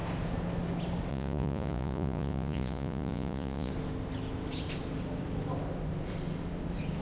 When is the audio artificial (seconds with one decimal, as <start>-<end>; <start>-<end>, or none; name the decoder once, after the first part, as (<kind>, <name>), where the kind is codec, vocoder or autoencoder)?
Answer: 1.1-3.7 (vocoder, Vocos)